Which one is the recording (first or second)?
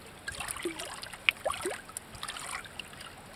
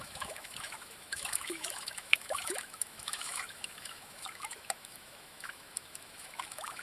first